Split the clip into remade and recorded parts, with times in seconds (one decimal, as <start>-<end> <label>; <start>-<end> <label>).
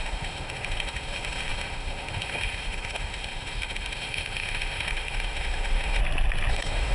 0.0-6.0 remade; 6.0-6.5 recorded; 6.5-6.9 remade